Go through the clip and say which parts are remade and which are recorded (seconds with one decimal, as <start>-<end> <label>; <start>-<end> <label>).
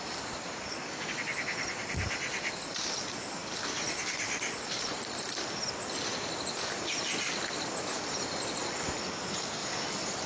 0.0-3.4 recorded; 3.4-4.0 remade; 4.0-9.6 recorded; 9.6-10.3 remade